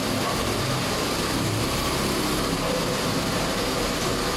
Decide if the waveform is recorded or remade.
recorded